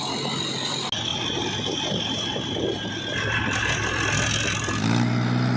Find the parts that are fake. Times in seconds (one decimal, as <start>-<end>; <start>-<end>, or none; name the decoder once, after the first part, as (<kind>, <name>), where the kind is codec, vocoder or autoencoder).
none